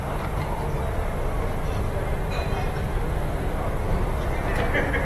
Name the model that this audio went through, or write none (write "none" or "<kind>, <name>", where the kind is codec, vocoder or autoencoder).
none